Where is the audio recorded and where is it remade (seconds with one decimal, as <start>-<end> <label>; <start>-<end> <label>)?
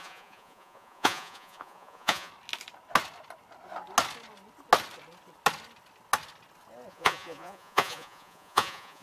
0.0-2.3 remade; 2.3-6.9 recorded; 6.9-9.0 remade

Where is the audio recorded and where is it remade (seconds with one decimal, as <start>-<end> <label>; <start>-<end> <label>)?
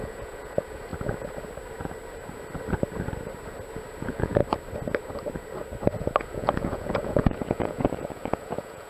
0.0-0.9 remade; 0.9-4.0 recorded; 4.0-4.4 remade; 4.4-6.2 recorded; 6.2-8.9 remade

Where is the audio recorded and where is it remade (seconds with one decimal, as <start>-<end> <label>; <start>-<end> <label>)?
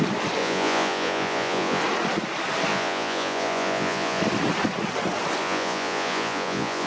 0.0-0.4 recorded; 0.4-1.8 remade; 1.8-2.7 recorded; 2.7-4.2 remade; 4.2-5.4 recorded; 5.4-6.9 remade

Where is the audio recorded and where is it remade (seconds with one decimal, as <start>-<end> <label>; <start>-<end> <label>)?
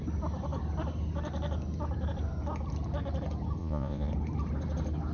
0.0-3.6 recorded; 3.6-4.1 remade; 4.1-5.1 recorded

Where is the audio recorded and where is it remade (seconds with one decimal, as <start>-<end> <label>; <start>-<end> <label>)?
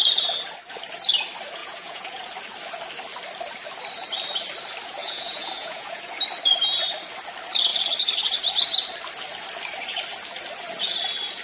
0.0-1.6 recorded; 1.6-2.2 remade; 2.2-5.0 recorded; 5.0-6.1 remade; 6.1-11.4 recorded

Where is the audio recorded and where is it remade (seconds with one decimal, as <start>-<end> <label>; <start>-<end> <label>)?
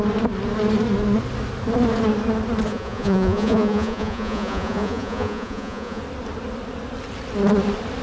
0.0-2.7 recorded; 2.7-6.0 remade; 6.0-8.0 recorded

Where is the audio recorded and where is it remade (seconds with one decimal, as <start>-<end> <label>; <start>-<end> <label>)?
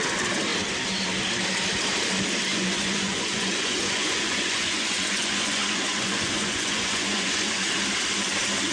0.0-2.5 recorded; 2.5-7.7 remade; 7.7-8.7 recorded